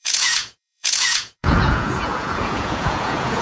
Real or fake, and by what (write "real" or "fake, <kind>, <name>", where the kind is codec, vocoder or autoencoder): fake, vocoder, Vocos